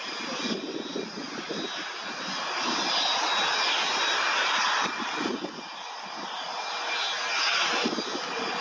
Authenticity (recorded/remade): recorded